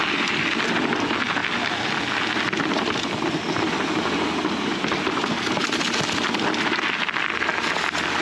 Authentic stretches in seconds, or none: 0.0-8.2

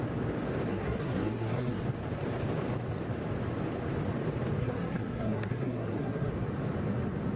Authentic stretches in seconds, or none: 0.0-0.7; 1.8-4.6; 6.3-7.4

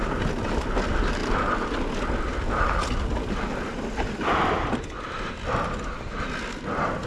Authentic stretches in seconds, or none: 0.0-7.1

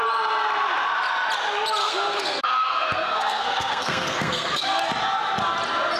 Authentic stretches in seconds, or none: 0.0-1.8; 4.9-6.0

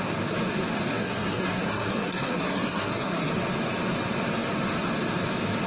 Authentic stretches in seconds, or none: 0.0-0.9; 3.3-5.7